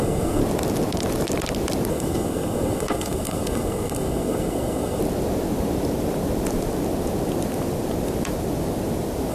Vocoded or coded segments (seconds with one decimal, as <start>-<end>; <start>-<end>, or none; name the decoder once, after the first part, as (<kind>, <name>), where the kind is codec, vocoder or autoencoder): 0.0-0.4 (codec, SNAC); 1.9-5.0